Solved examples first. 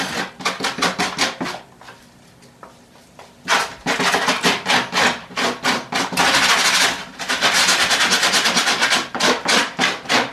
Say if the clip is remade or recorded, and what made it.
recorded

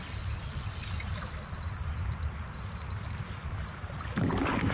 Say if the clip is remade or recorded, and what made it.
recorded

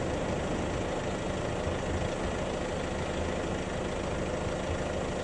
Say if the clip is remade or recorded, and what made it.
recorded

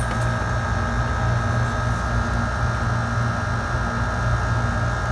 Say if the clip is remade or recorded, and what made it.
recorded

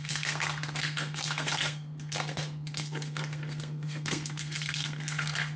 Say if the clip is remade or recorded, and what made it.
remade, codec, SNAC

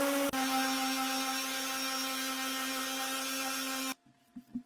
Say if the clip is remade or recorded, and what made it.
recorded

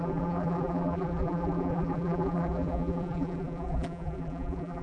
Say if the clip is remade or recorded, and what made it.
remade, vocoder, BigVGAN v2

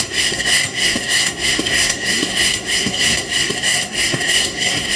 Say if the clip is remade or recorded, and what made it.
remade, codec, SNAC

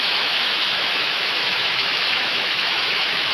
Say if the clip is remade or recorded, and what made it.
remade, autoencoder, DAC-VAE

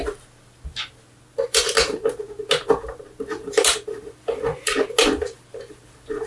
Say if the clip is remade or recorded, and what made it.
recorded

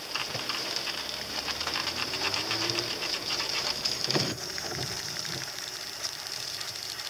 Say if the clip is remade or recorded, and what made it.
remade, vocoder, BigVGAN v2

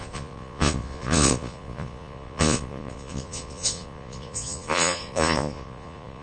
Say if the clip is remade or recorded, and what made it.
remade, vocoder, Vocos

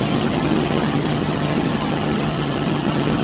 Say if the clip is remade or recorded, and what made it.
remade, vocoder, HiFi-GAN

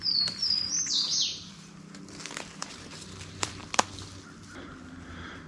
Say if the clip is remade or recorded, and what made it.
remade, vocoder, BigVGAN v2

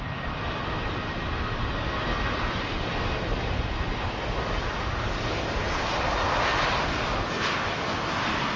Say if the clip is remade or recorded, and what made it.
recorded